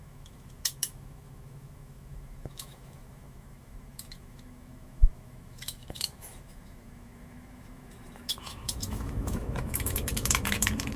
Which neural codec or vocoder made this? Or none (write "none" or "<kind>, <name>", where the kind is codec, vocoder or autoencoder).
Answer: autoencoder, DAC-VAE